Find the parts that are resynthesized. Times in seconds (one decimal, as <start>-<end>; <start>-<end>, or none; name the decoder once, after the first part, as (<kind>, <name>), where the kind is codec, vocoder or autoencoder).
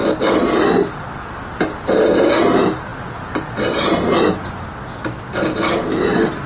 none